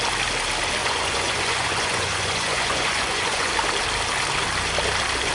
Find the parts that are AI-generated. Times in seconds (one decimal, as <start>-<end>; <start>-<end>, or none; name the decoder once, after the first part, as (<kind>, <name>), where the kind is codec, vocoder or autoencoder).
0.8-3.5 (vocoder, Vocos)